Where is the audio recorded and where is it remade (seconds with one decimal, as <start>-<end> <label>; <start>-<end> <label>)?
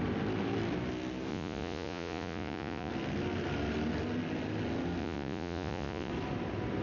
0.0-1.3 recorded; 1.3-2.9 remade; 2.9-5.0 recorded; 5.0-6.1 remade; 6.1-6.8 recorded